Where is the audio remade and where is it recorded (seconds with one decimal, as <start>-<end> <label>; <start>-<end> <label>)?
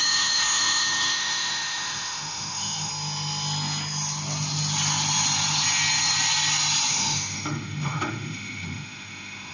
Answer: 0.0-2.9 remade; 2.9-6.9 recorded; 6.9-9.5 remade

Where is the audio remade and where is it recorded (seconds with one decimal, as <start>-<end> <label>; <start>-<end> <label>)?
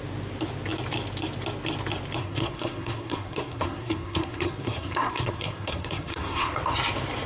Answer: 0.0-2.2 recorded; 2.2-6.6 remade; 6.6-7.3 recorded